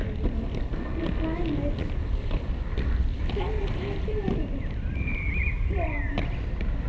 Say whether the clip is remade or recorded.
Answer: recorded